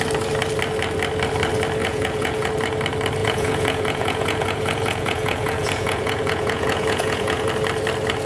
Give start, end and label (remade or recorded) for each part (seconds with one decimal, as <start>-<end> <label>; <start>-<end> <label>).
0.0-1.8 recorded; 1.8-2.5 remade; 2.5-3.2 recorded; 3.2-7.5 remade; 7.5-8.3 recorded